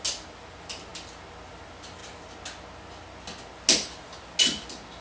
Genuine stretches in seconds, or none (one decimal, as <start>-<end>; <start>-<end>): 0.0-5.0